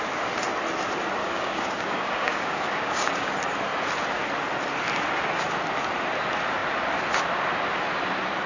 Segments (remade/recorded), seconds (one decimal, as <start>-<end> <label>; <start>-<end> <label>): 0.0-1.2 recorded; 1.2-3.3 remade; 3.3-8.5 recorded